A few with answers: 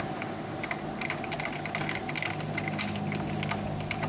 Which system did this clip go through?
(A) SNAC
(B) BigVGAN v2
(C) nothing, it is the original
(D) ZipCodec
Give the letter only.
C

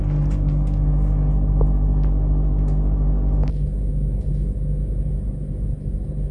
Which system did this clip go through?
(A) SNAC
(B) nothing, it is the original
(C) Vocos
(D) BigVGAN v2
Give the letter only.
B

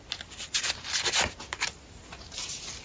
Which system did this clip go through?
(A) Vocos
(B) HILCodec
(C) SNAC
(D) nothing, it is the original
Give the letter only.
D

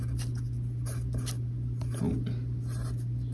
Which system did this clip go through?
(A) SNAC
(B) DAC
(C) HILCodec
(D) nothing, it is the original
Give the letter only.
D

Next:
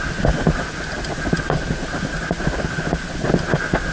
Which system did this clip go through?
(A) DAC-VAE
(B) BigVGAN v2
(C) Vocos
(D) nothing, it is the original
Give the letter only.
D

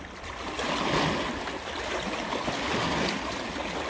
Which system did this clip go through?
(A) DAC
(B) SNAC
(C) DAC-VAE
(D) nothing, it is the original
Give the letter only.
D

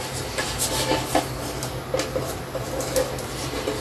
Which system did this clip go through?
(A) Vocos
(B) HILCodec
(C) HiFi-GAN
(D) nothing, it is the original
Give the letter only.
D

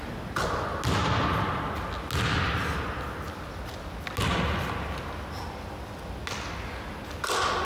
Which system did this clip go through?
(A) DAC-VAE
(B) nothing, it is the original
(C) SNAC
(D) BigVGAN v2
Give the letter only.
B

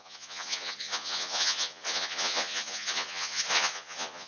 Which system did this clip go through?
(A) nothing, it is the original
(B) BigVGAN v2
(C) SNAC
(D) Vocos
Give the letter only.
D